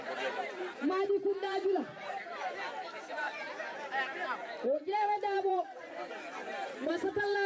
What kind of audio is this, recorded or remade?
remade